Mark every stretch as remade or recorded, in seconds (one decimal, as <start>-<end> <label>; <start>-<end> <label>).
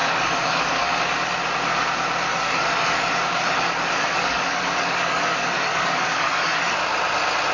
0.0-1.0 remade; 1.0-2.3 recorded; 2.3-6.8 remade; 6.8-7.5 recorded